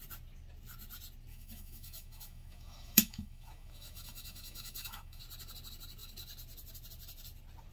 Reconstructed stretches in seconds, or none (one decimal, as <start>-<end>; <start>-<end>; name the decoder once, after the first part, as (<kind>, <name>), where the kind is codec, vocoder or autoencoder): 1.3-5.2 (autoencoder, DAC-VAE)